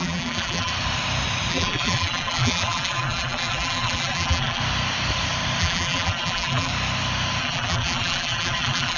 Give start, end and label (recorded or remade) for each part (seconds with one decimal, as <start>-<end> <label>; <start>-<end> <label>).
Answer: 0.0-0.7 remade; 0.7-1.5 recorded; 1.5-4.6 remade; 4.6-5.6 recorded; 5.6-6.7 remade; 6.7-7.4 recorded; 7.4-9.0 remade